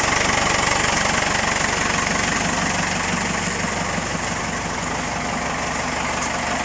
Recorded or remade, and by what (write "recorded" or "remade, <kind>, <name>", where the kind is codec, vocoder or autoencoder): recorded